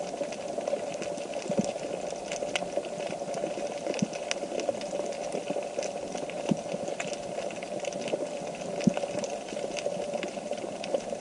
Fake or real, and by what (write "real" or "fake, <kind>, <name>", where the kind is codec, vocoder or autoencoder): real